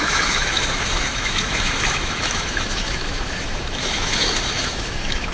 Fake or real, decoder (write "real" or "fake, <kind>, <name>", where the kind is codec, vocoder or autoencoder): fake, autoencoder, DAC-VAE